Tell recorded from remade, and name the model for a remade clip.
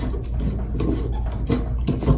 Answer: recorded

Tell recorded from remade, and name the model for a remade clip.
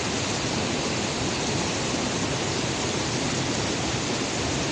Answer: recorded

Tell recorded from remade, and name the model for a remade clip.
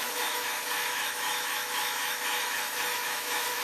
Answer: remade, autoencoder, DAC-VAE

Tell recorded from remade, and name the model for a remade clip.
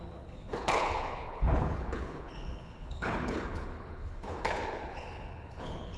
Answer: remade, codec, HILCodec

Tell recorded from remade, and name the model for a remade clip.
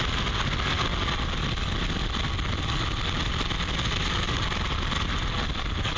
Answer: recorded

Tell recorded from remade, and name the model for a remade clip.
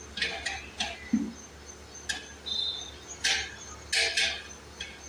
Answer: recorded